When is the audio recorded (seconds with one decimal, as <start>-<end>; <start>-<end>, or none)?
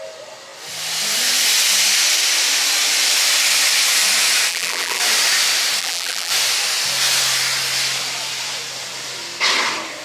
0.0-4.5; 5.0-5.8; 6.3-10.0